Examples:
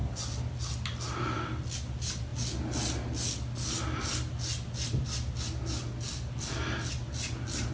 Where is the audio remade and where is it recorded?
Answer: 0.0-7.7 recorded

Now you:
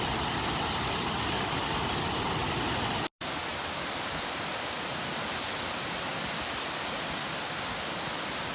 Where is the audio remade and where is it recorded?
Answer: 0.0-8.5 recorded